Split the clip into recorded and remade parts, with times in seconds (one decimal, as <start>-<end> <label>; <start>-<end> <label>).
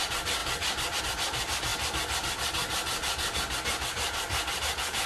0.0-5.1 recorded